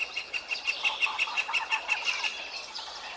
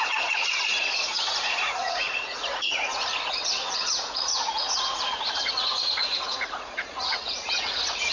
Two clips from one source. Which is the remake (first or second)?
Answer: second